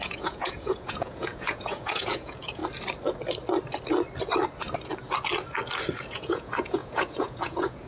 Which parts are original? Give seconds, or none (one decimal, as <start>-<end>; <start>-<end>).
2.6-6.0